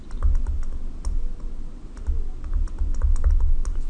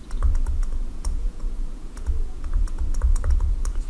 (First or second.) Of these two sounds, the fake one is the second